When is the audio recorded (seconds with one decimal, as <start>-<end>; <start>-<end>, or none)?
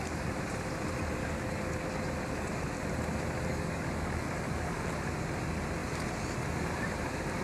0.0-1.2; 1.8-3.5; 4.9-7.4